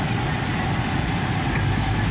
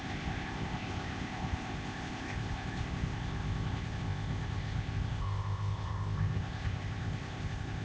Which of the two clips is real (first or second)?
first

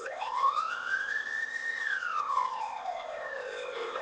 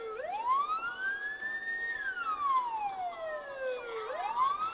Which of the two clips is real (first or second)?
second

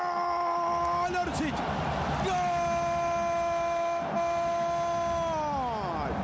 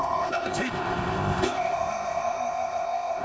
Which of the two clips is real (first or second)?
first